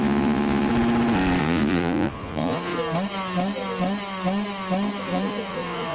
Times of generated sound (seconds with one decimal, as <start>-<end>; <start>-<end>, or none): 0.0-0.7; 1.4-2.7; 5.0-5.9